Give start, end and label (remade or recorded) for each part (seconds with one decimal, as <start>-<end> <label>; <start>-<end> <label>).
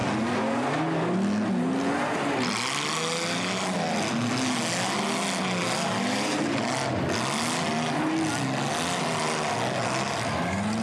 0.0-10.8 recorded